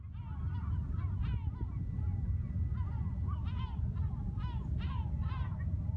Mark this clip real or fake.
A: real